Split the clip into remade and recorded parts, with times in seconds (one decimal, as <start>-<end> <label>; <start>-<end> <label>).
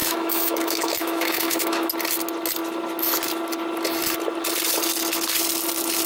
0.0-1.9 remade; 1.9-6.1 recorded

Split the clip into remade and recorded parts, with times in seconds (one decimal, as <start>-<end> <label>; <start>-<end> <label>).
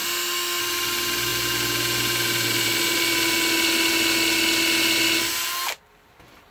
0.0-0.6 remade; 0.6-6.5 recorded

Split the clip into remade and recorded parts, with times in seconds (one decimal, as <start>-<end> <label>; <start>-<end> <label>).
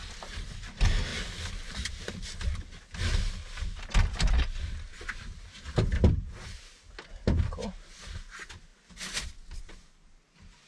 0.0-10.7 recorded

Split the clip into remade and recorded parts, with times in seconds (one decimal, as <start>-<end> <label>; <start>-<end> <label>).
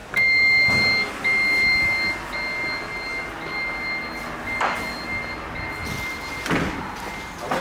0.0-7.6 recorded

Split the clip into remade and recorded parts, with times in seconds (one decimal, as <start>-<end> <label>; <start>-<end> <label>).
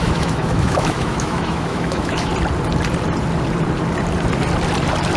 0.0-2.3 remade; 2.3-5.2 recorded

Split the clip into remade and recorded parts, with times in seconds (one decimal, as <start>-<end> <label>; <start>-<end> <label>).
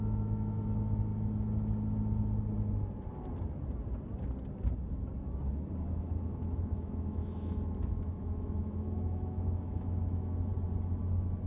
0.0-1.1 remade; 1.1-5.9 recorded; 5.9-10.5 remade; 10.5-11.5 recorded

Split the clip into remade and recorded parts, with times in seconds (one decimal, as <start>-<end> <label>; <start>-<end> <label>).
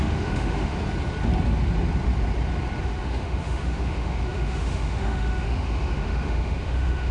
0.0-0.7 remade; 0.7-2.8 recorded; 2.8-7.1 remade